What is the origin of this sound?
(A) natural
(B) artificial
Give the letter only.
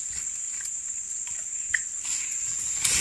A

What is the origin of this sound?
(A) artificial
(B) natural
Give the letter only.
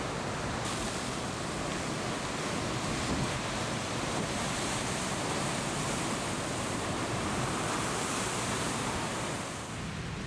B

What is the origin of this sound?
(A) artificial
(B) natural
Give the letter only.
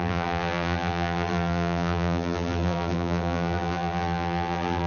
A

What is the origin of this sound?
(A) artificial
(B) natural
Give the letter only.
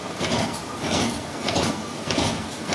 A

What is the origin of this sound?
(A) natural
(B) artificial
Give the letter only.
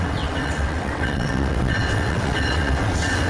B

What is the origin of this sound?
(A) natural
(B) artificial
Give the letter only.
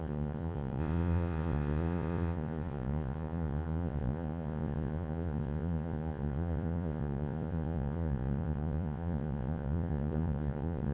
B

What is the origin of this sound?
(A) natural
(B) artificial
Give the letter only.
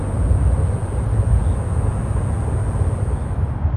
A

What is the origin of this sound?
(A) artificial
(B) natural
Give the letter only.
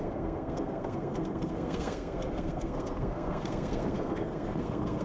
A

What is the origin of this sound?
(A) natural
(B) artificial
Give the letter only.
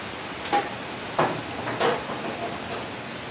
A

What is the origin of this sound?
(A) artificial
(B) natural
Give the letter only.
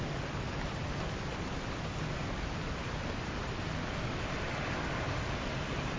B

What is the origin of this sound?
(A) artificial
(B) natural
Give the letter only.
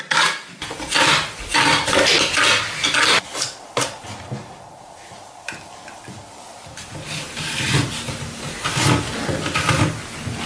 B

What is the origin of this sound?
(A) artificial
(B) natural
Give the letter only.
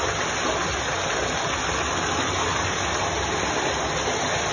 B